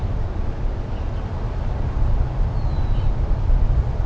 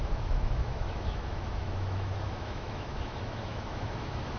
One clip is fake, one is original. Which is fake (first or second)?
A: second